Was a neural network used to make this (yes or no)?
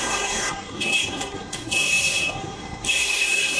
yes